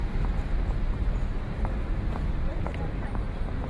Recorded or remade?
remade